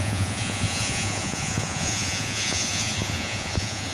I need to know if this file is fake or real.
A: fake